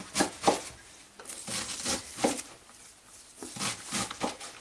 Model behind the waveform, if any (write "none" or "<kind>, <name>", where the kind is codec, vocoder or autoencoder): none